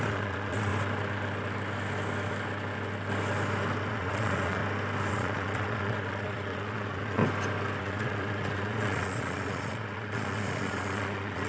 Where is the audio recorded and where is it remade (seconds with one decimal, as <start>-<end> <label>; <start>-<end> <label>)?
0.0-0.7 remade; 0.7-3.9 recorded; 3.9-4.6 remade; 4.6-5.1 recorded; 5.1-7.2 remade; 7.2-7.8 recorded; 7.8-11.5 remade